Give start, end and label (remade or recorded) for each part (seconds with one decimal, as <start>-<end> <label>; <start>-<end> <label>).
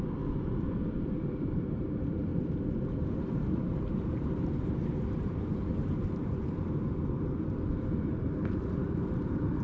0.0-2.3 remade; 2.3-2.8 recorded; 2.8-9.6 remade